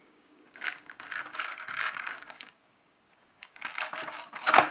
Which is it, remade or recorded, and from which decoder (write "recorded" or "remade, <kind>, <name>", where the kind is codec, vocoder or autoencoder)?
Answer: remade, codec, DAC